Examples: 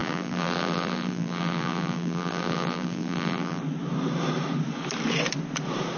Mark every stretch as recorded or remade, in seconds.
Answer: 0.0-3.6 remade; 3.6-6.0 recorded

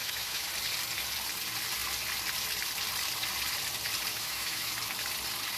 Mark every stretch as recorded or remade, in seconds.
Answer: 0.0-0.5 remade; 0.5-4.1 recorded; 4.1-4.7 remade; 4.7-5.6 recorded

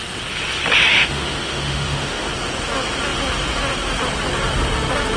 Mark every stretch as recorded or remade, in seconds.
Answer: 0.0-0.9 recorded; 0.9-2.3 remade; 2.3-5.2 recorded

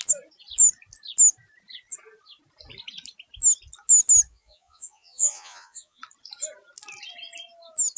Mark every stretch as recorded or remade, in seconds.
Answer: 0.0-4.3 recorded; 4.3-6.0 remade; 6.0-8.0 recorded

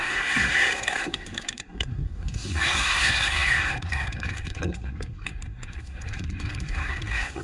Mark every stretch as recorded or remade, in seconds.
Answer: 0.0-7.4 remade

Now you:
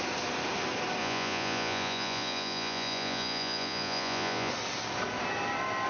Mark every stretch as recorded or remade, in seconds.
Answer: 0.0-1.0 recorded; 1.0-4.5 remade; 4.5-5.9 recorded

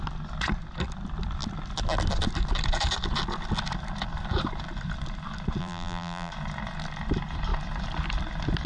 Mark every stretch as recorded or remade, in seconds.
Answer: 0.0-5.6 recorded; 5.6-6.3 remade; 6.3-8.7 recorded